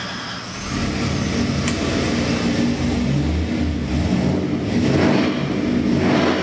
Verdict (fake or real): real